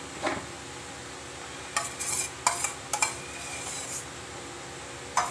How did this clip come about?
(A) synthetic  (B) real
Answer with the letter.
B